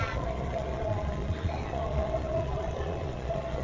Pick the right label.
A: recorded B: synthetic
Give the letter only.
B